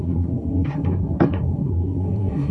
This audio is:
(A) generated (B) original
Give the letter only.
A